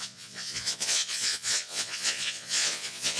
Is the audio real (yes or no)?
no